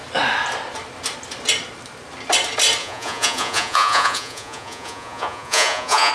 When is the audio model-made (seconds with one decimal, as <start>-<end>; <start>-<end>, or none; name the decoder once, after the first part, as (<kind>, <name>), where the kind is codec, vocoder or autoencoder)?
2.8-6.1 (vocoder, Vocos)